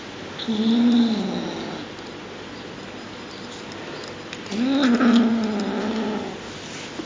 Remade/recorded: recorded